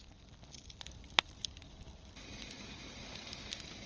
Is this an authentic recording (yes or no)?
yes